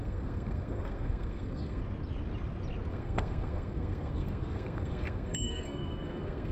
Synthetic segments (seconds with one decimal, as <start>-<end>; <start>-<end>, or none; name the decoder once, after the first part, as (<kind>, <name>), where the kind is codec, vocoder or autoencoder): 0.0-1.8 (codec, SNAC); 2.9-6.5